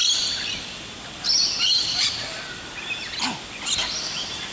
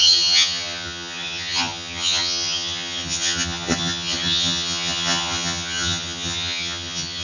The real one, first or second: first